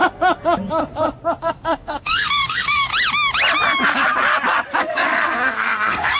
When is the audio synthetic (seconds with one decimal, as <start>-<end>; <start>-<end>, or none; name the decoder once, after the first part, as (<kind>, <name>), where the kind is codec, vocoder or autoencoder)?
1.4-2.9 (codec, SNAC); 4.8-6.2